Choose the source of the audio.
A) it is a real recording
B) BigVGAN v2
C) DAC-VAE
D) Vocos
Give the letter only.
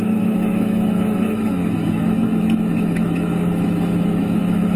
C